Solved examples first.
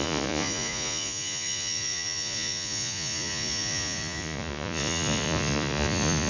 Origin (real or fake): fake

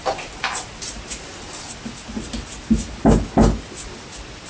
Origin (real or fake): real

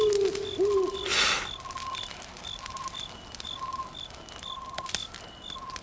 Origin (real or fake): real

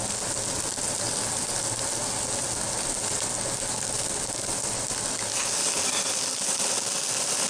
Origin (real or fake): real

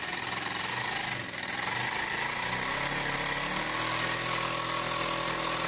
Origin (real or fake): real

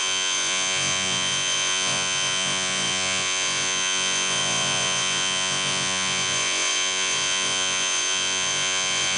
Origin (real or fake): fake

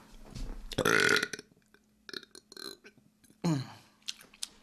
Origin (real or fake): real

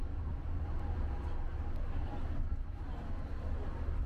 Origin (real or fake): real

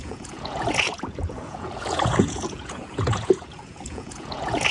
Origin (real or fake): fake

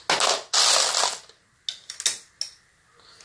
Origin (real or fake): real